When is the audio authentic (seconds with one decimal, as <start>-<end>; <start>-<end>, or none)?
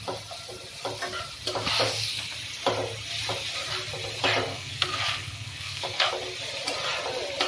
0.0-4.5; 6.1-7.5